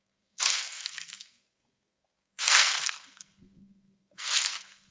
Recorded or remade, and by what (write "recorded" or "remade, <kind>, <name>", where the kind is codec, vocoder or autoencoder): remade, codec, SNAC